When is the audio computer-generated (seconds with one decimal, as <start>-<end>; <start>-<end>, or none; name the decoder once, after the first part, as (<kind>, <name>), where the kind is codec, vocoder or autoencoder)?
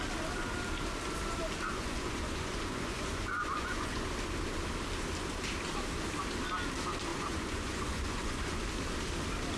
1.7-4.1 (vocoder, Vocos); 7.1-8.6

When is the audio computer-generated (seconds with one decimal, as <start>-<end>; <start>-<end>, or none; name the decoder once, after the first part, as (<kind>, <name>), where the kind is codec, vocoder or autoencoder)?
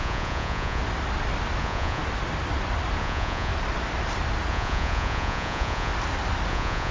0.0-0.8 (vocoder, Vocos); 1.6-2.0; 3.0-3.5; 4.5-5.9; 6.5-6.9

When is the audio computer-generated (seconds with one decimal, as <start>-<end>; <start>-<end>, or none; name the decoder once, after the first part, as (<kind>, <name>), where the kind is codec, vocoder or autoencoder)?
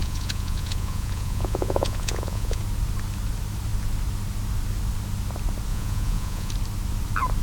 0.0-2.6 (vocoder, Vocos); 5.7-6.5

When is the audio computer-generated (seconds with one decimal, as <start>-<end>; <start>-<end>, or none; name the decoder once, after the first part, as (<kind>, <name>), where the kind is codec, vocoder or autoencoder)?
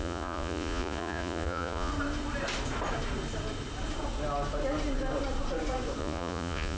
0.0-1.9 (vocoder, Vocos); 6.0-6.8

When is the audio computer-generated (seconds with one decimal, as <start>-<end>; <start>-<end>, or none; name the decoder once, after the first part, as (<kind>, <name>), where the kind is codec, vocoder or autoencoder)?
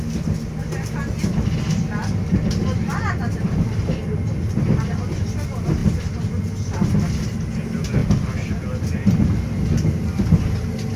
none